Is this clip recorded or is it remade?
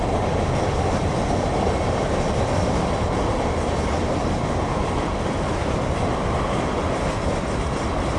recorded